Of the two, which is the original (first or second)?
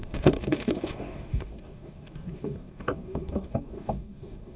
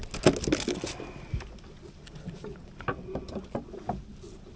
second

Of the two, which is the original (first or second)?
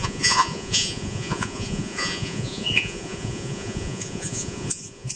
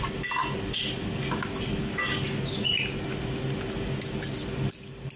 second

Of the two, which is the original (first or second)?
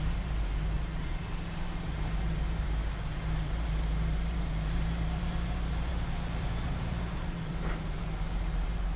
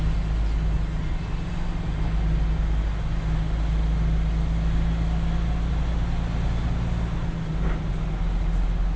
second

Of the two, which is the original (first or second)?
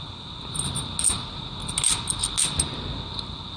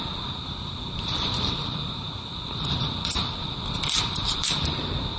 first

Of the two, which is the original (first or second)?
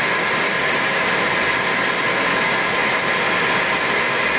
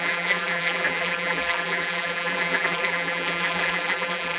first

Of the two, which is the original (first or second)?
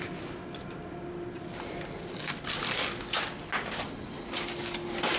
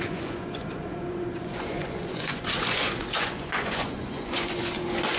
first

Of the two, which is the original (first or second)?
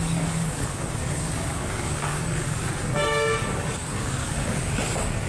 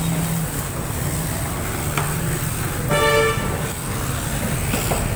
second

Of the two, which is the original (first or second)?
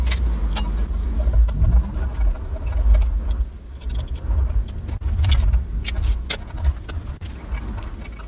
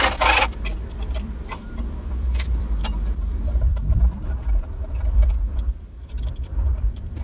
first